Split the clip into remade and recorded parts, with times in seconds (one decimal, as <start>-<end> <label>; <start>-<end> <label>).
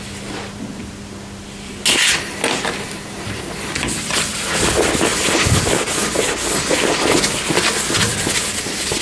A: 0.0-9.0 recorded